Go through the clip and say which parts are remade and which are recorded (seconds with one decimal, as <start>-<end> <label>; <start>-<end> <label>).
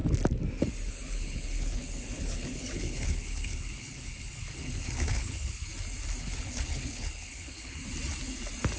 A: 0.0-0.9 recorded; 0.9-5.7 remade; 5.7-6.2 recorded; 6.2-7.8 remade; 7.8-8.8 recorded